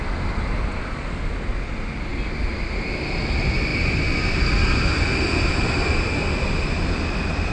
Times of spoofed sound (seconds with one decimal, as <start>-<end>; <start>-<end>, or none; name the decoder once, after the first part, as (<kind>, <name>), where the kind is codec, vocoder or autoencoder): none